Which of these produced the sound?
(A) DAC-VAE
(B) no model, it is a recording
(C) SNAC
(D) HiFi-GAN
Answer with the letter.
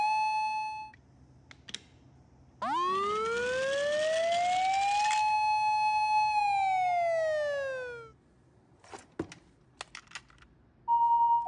B